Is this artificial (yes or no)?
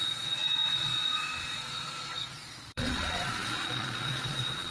yes